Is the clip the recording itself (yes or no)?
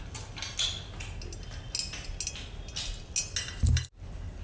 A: yes